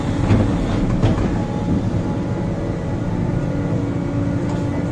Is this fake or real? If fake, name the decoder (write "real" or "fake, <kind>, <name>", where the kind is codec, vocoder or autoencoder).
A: real